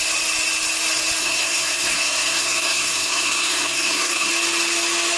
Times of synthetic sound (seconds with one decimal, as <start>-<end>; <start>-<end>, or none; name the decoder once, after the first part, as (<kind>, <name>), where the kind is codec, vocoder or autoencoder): 1.2-4.3 (codec, SNAC)